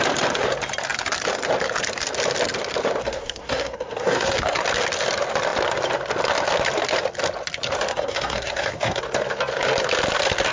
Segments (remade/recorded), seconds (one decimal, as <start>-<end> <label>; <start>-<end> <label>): 0.0-3.0 recorded; 3.0-4.6 remade; 4.6-7.9 recorded; 7.9-9.0 remade; 9.0-10.5 recorded

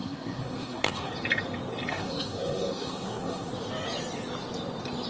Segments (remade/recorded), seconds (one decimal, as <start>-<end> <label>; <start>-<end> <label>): 0.0-1.1 remade; 1.1-1.9 recorded; 1.9-3.5 remade; 3.5-5.1 recorded

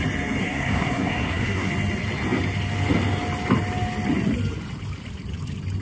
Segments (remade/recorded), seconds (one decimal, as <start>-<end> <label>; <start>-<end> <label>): 0.0-0.4 recorded; 0.4-1.7 remade; 1.7-5.8 recorded

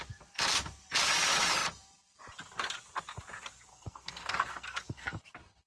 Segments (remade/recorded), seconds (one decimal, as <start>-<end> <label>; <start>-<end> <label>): 0.0-3.7 recorded; 3.7-5.2 remade; 5.2-5.7 recorded

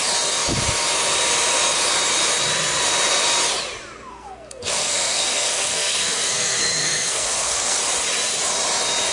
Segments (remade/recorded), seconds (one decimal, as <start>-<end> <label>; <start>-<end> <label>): 0.0-4.1 recorded; 4.1-7.8 remade; 7.8-9.1 recorded